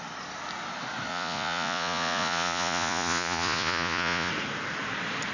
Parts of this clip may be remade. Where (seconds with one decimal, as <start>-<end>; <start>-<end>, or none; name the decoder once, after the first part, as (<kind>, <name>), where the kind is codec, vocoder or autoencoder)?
1.1-4.3 (vocoder, Vocos)